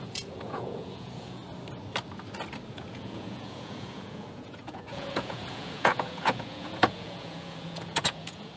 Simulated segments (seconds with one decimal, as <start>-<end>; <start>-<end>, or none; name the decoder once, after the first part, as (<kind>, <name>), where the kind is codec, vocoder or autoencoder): 0.0-1.4 (vocoder, Vocos); 2.7-8.6